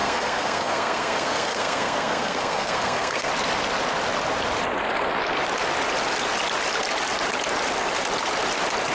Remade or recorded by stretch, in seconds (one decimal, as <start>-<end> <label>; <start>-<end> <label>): 0.0-3.3 remade; 3.3-8.9 recorded